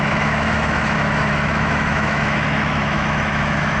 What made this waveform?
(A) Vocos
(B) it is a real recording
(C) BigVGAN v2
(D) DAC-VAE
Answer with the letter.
D